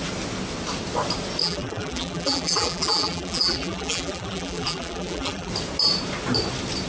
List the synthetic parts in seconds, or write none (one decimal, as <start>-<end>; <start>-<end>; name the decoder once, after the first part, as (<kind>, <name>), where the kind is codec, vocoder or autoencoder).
1.4-5.5 (vocoder, BigVGAN v2)

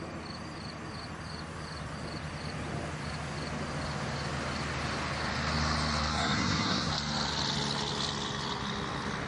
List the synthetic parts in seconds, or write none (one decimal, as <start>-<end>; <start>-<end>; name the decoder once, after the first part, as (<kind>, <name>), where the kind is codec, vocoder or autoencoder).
6.1-6.9 (codec, SNAC)